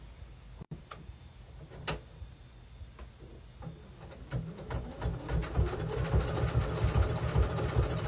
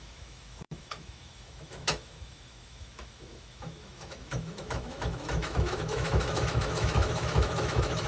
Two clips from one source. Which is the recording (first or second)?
first